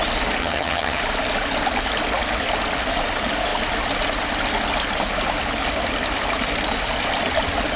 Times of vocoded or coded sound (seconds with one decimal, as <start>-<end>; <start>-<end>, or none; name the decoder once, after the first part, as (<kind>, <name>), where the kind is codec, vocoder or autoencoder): 0.4-1.0 (vocoder, HiFi-GAN)